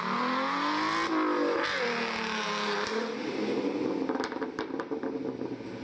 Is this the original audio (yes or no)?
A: yes